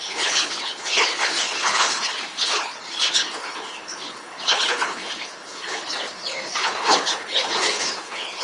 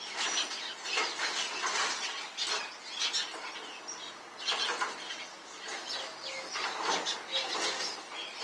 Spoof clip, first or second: first